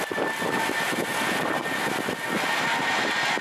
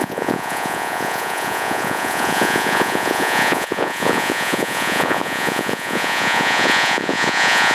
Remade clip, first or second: second